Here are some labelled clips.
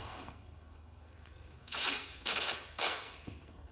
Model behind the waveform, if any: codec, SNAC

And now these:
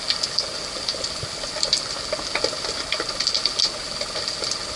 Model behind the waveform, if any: none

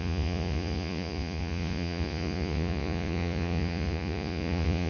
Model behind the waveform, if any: vocoder, Vocos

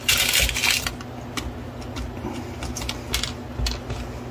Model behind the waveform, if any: none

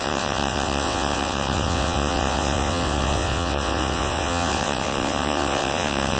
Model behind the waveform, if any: vocoder, WaveNeXt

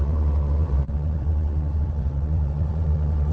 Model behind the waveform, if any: vocoder, WaveNeXt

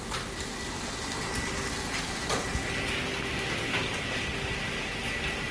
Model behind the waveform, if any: none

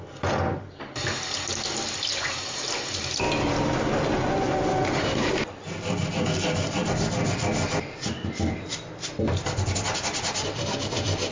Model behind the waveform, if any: none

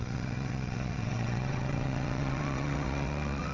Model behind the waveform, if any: vocoder, WaveNeXt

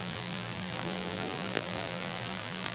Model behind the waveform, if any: vocoder, BigVGAN v2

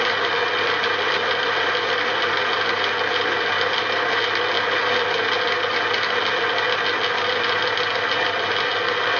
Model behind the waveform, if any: none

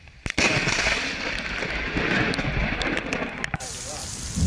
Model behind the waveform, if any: none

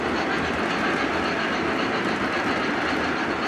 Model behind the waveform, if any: none